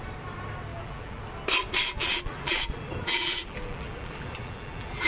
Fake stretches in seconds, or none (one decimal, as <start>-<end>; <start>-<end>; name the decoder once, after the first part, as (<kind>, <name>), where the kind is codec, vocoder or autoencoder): 0.7-1.2 (vocoder, BigVGAN v2); 1.8-5.1